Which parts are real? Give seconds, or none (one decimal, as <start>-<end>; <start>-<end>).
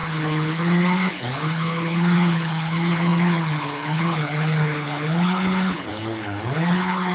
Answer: none